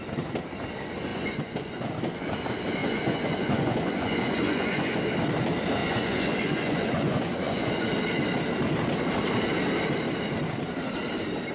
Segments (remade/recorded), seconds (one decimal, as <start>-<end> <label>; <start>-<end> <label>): 0.0-1.1 recorded; 1.1-1.9 remade; 1.9-2.8 recorded; 2.8-5.0 remade; 5.0-5.8 recorded; 5.8-7.9 remade; 7.9-11.5 recorded